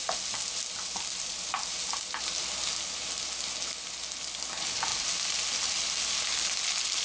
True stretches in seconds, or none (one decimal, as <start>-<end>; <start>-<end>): 0.0-7.0